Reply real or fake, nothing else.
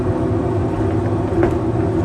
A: real